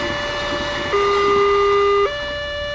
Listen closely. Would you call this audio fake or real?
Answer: real